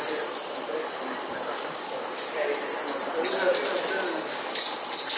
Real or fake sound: real